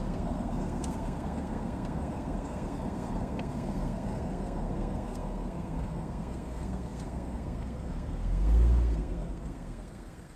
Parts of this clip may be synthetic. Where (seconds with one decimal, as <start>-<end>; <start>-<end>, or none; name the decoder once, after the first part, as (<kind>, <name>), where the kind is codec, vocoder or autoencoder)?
0.0-10.4 (codec, SNAC)